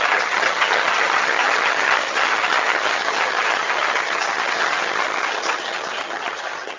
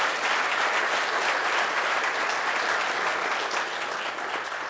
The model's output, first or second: first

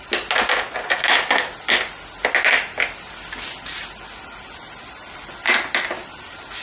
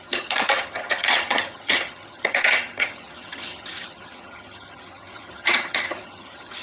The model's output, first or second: second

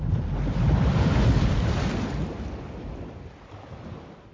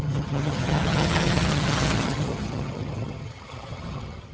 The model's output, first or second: second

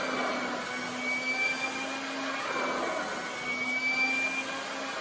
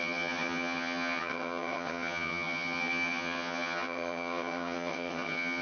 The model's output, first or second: second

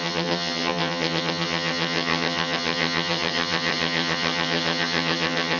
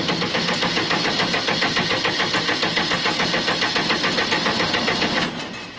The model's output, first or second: first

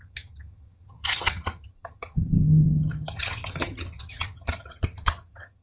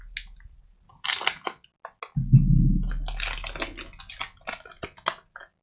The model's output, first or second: first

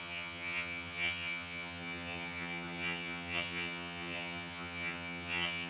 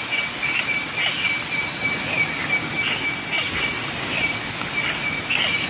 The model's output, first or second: first